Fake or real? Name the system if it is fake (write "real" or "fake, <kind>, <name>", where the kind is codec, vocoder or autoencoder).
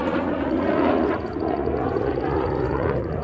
fake, vocoder, Vocos